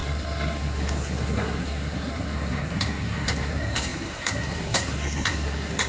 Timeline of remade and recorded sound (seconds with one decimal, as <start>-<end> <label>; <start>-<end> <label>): 0.0-5.9 remade